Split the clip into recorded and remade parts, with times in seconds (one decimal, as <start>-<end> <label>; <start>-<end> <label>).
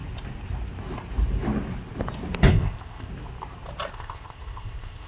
0.0-2.5 recorded; 2.5-3.1 remade; 3.1-3.9 recorded; 3.9-5.1 remade